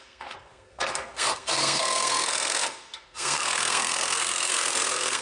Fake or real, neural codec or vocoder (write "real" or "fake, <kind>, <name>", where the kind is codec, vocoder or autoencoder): fake, codec, SNAC